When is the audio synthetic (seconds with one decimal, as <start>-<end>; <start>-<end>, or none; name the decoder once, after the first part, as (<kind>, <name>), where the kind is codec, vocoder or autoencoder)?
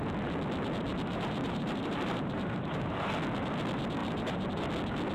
0.9-3.1 (vocoder, BigVGAN v2); 4.0-4.6